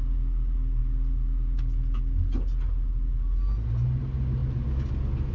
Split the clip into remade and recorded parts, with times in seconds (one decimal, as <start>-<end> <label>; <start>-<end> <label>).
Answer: 0.0-5.3 recorded